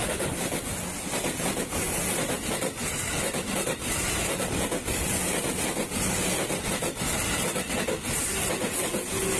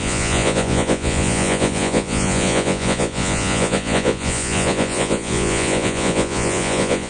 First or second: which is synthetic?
second